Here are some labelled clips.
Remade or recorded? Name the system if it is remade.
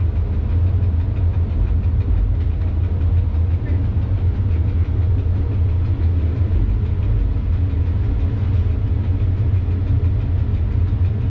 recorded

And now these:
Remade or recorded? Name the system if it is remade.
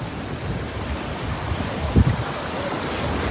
recorded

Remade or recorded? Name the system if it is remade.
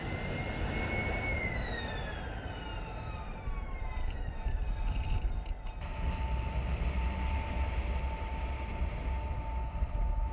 recorded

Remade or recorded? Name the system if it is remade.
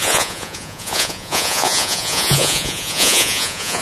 remade, vocoder, Vocos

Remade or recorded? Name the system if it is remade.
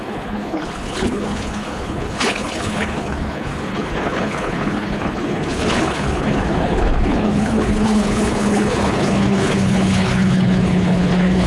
remade, codec, HILCodec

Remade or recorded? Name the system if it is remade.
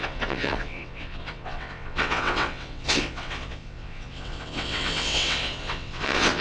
remade, vocoder, WaveNeXt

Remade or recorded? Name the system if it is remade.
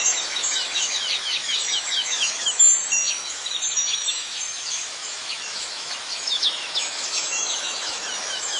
remade, autoencoder, DAC-VAE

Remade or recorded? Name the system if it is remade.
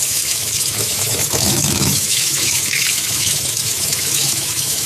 remade, autoencoder, DAC-VAE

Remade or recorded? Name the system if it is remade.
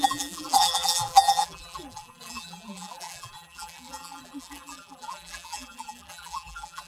remade, vocoder, BigVGAN v2